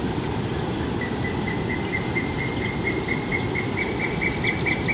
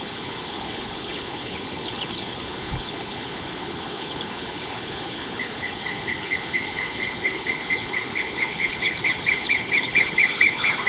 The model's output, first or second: second